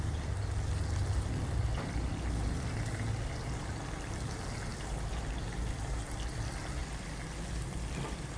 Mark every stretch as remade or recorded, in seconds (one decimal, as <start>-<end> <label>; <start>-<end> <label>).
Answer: 0.0-8.4 recorded